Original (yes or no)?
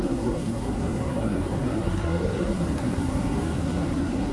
no